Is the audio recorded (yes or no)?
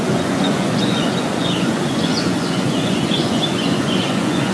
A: no